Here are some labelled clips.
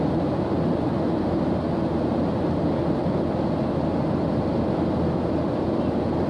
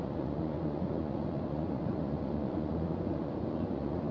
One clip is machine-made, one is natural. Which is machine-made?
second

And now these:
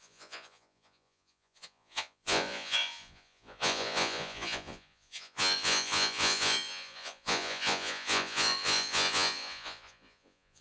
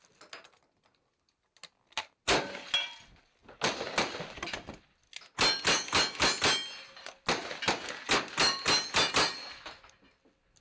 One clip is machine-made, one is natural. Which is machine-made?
first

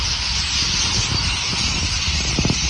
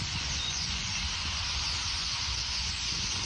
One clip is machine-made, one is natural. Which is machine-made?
second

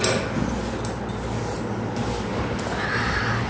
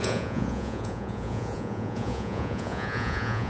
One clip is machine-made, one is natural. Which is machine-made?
second